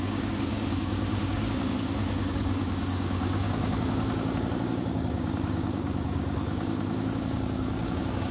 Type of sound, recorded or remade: remade